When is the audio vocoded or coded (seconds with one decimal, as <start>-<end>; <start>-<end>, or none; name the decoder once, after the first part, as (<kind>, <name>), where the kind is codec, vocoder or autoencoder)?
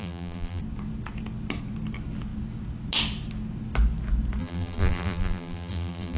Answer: 0.0-0.6 (vocoder, BigVGAN v2); 4.4-6.2